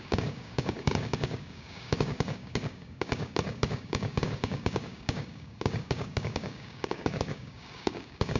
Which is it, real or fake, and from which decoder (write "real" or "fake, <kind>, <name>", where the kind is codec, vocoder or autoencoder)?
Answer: fake, codec, DAC